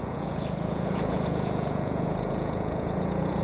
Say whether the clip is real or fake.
fake